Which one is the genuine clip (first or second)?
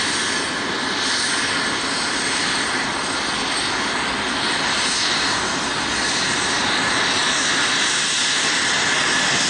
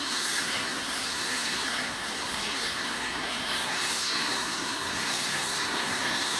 first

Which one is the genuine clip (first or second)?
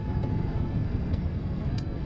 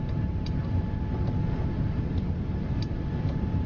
second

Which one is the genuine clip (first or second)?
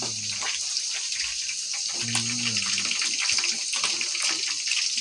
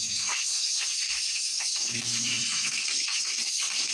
first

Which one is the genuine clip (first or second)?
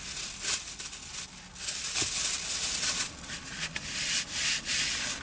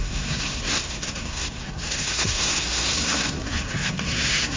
first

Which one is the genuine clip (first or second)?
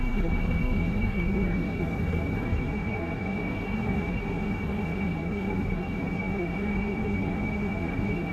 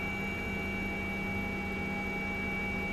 second